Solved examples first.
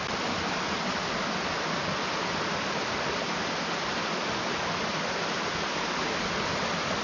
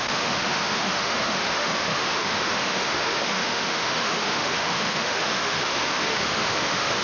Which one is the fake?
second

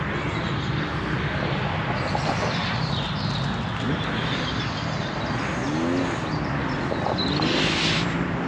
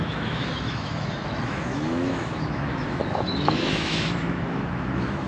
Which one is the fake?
second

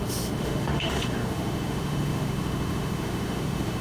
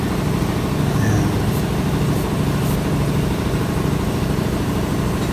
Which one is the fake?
first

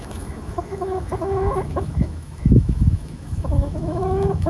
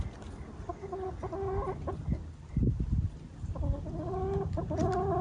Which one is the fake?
first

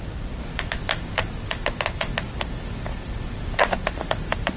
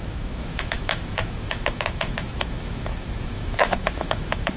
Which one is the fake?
second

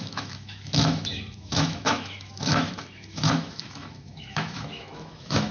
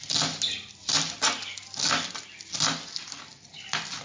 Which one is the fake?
first